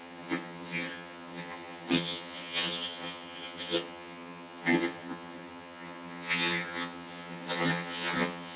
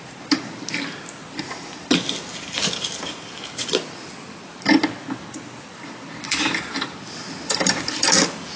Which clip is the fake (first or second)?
first